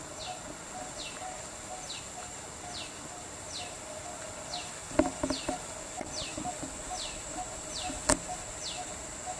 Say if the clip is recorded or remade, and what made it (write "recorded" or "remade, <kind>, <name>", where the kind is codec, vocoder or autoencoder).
recorded